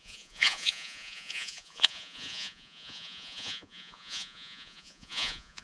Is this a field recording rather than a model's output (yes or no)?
no